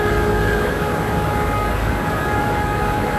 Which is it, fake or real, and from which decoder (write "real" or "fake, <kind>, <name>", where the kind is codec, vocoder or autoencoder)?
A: fake, codec, DAC